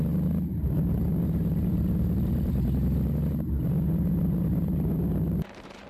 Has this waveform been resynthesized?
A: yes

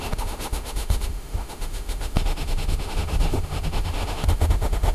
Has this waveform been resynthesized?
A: yes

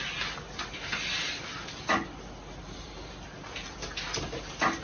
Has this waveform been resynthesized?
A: no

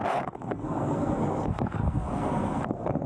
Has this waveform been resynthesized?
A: yes